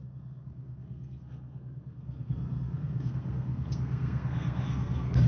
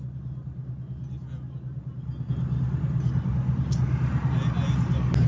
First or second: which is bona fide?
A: second